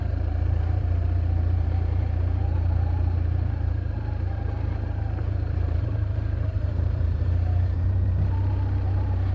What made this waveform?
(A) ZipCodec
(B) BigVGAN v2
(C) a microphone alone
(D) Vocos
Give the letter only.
B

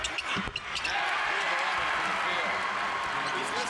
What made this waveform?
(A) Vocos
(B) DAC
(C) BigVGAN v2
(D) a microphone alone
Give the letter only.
D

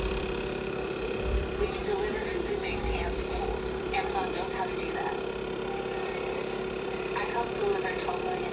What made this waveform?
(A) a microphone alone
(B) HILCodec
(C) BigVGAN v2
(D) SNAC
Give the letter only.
C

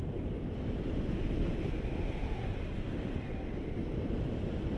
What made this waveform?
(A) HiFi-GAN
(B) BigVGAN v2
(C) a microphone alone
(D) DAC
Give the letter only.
C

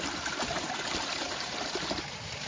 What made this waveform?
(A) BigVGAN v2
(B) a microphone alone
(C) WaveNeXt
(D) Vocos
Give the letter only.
B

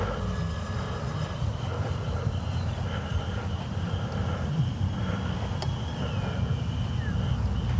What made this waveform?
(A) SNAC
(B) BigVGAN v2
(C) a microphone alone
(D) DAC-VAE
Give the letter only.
B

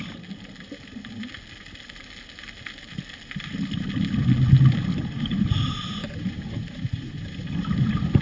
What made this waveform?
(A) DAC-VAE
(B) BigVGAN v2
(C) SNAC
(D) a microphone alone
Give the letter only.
D